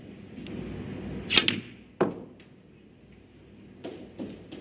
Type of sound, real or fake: real